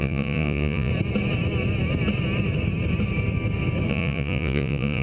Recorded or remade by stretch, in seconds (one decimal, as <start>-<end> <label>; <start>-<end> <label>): 0.0-0.9 remade; 0.9-3.9 recorded; 3.9-5.0 remade